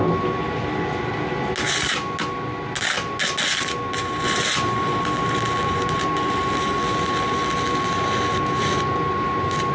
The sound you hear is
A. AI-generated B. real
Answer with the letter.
B